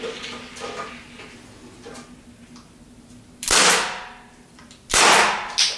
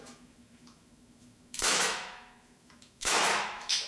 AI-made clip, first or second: second